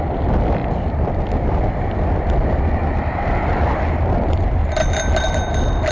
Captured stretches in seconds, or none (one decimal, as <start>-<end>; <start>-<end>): 4.6-5.2

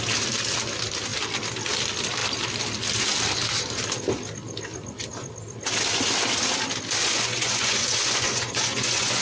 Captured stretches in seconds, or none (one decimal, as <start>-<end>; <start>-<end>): 0.0-7.0

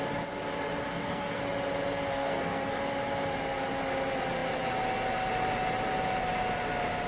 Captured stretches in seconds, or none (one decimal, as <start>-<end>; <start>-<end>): 0.0-0.9; 1.4-2.1; 2.7-7.1

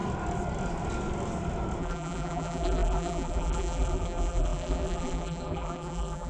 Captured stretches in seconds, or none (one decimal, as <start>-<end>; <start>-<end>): 0.0-1.8

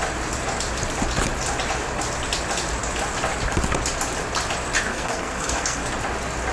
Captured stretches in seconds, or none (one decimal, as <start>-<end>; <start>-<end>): 0.0-4.9; 5.8-6.5